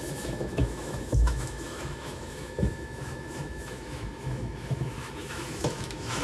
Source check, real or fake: fake